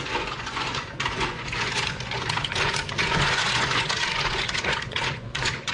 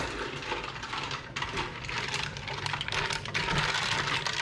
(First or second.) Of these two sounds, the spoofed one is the first